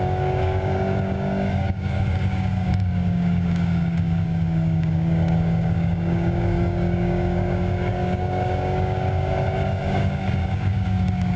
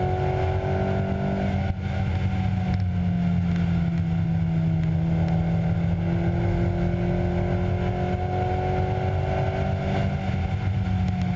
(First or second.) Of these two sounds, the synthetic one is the first